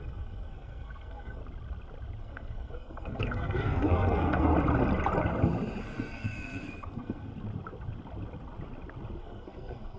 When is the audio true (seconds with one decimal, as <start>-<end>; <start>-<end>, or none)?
1.4-2.2; 4.5-5.8; 7.3-9.2